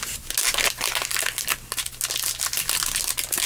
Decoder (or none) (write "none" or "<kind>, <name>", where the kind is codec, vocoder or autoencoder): none